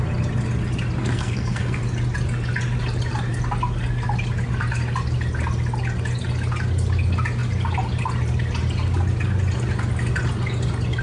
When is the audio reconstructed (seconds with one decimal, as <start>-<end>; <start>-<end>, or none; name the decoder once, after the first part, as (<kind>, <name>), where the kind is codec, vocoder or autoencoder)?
1.0-1.8 (codec, SNAC)